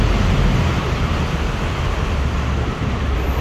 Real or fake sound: real